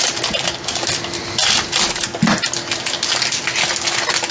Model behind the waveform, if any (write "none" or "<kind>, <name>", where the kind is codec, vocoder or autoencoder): none